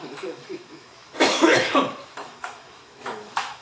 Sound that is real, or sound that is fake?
fake